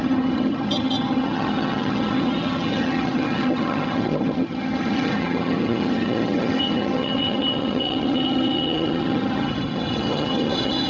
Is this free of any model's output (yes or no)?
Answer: no